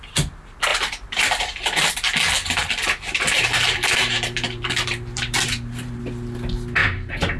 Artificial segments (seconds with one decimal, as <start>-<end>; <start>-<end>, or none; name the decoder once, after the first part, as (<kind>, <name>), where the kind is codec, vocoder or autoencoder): 0.7-1.9 (vocoder, BigVGAN v2); 2.6-6.0; 6.8-7.4